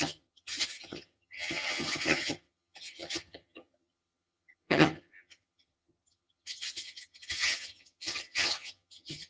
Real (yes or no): no